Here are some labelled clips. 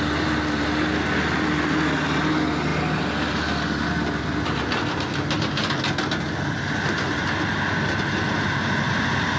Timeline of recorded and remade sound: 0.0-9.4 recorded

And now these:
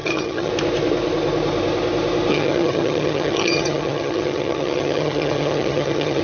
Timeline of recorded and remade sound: 0.0-0.5 remade; 0.5-2.3 recorded; 2.3-6.2 remade

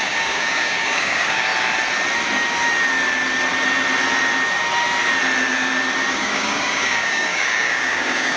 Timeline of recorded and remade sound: 0.0-1.5 remade; 1.5-6.1 recorded; 6.1-8.4 remade

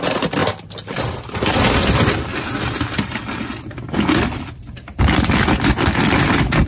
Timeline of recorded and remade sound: 0.0-6.7 recorded